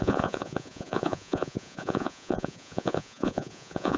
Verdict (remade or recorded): remade